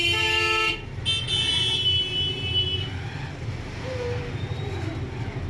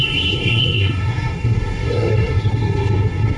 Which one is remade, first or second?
second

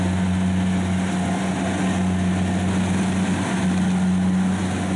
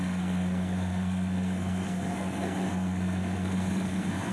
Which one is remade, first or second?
second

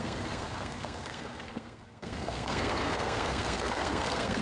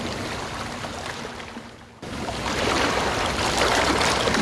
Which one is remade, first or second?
first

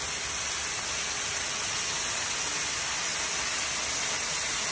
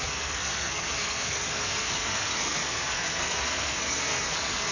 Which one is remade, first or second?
second